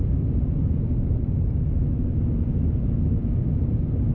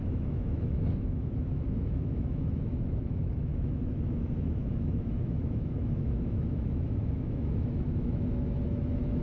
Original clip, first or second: first